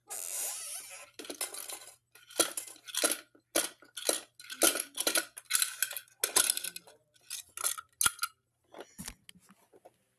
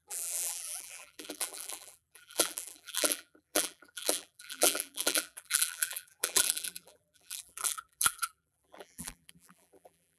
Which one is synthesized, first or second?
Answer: second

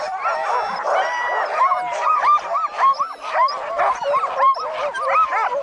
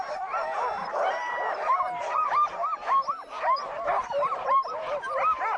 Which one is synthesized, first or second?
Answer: second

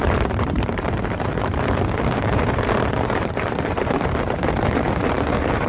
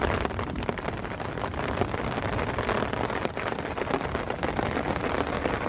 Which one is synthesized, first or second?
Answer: first